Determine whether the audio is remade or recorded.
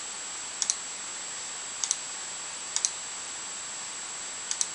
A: recorded